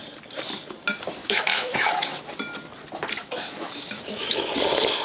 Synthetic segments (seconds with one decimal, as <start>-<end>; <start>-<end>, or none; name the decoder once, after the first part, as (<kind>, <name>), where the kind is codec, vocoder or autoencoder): 1.2-2.2 (autoencoder, DAC-VAE); 3.2-4.5